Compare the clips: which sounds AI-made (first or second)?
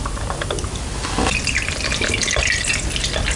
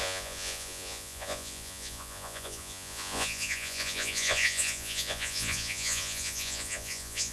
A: second